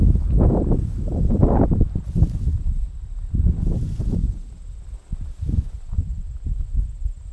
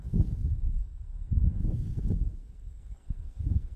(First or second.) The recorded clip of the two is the first